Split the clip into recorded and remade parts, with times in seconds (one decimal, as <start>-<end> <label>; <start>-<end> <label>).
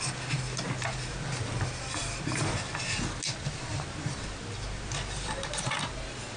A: 0.0-6.4 recorded